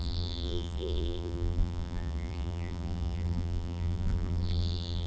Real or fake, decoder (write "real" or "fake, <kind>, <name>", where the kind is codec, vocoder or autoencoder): fake, vocoder, BigVGAN v2